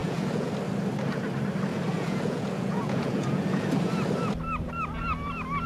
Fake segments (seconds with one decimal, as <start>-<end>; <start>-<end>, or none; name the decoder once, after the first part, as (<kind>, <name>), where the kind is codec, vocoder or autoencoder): 0.0-0.5 (vocoder, Vocos); 1.7-3.9